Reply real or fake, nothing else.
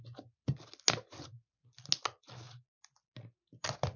real